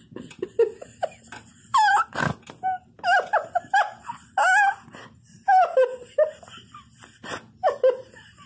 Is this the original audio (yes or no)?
yes